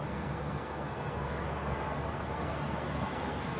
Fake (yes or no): yes